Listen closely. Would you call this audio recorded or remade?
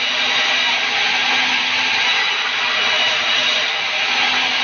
recorded